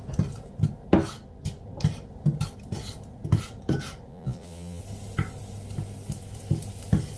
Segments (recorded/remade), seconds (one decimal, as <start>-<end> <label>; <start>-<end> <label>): 0.0-4.1 recorded; 4.1-4.8 remade; 4.8-7.2 recorded